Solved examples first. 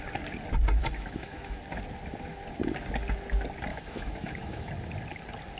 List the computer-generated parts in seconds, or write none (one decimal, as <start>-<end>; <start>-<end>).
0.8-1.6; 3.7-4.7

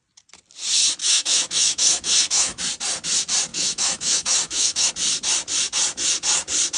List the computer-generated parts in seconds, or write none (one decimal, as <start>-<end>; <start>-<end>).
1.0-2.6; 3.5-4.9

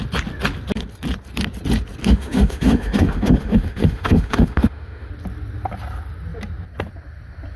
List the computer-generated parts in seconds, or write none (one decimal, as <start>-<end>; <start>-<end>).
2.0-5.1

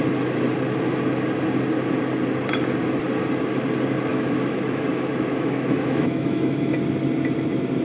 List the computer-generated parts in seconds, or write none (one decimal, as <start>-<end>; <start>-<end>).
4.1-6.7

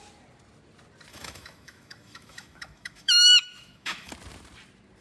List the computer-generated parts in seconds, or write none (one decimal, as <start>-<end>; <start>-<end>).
1.1-4.1

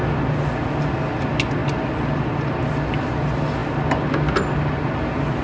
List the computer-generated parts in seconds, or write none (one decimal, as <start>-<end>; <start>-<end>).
none

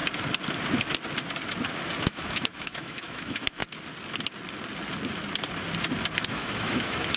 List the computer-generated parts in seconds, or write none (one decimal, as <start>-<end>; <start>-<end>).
2.0-3.6; 6.3-7.2

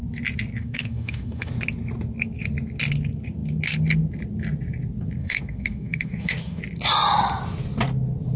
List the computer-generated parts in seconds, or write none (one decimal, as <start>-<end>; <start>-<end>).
0.6-1.5; 5.2-6.6